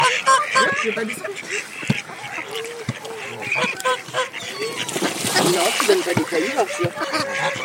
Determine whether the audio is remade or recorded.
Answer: remade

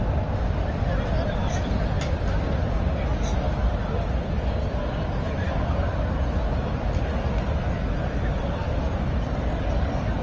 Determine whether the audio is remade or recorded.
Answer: recorded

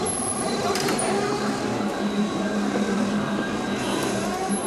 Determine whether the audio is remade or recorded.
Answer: remade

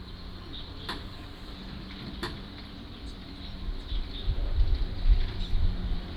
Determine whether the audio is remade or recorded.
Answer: remade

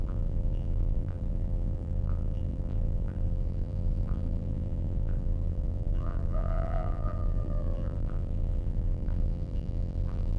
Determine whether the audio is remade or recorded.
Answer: remade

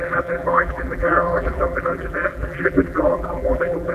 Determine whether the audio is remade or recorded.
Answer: remade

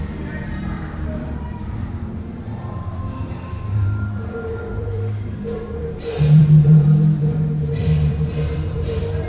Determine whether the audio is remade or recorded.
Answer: remade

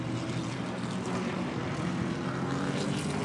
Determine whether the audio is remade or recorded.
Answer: recorded